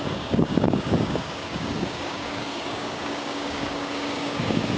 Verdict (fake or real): fake